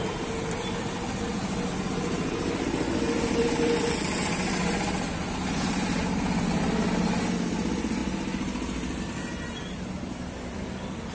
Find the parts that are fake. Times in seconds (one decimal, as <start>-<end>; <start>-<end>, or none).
none